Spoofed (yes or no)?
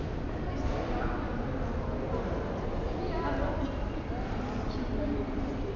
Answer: no